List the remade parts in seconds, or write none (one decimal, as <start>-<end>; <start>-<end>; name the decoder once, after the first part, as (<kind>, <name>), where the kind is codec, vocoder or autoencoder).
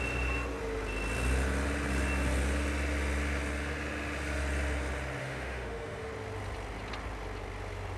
5.2-6.1 (autoencoder, DAC-VAE)